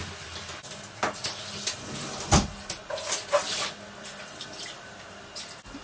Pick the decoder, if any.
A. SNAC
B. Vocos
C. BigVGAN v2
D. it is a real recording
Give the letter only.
D